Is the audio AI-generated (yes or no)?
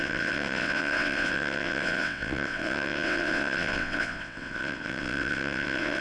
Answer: yes